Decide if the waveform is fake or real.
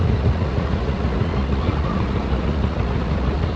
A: fake